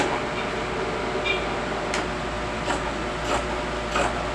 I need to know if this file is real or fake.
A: real